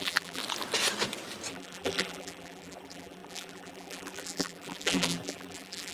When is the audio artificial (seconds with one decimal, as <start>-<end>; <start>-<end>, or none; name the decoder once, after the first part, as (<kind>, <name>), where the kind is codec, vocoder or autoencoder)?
0.0-0.4 (vocoder, BigVGAN v2); 1.5-5.9